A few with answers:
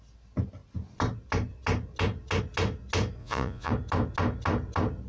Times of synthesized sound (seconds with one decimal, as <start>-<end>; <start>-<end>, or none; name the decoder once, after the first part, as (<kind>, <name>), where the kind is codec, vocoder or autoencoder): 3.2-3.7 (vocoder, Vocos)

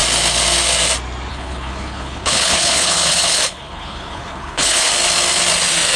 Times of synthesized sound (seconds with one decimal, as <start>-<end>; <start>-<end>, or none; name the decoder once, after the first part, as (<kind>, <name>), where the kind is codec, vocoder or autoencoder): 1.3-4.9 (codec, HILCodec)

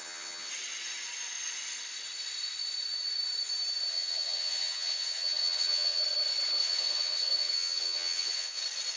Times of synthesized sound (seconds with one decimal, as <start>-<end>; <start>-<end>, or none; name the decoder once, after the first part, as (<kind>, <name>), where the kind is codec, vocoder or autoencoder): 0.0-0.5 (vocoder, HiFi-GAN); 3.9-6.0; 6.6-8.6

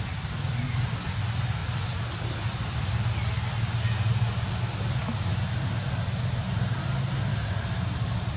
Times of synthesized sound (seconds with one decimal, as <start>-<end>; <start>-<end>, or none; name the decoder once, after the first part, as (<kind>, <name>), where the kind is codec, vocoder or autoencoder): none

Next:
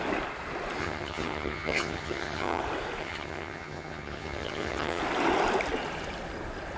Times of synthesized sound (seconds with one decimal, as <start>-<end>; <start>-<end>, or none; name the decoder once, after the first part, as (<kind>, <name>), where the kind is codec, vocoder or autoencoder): 0.8-2.6 (vocoder, HiFi-GAN); 3.0-5.0

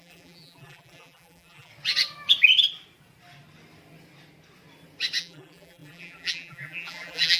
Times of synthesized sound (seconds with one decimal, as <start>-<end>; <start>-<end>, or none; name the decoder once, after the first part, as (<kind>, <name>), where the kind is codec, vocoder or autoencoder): 0.0-1.7 (vocoder, BigVGAN v2); 5.2-7.4